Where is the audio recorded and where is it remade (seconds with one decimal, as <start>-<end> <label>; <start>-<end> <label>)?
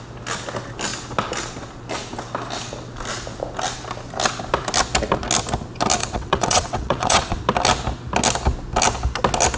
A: 0.0-6.0 recorded; 6.0-7.4 remade; 7.4-9.6 recorded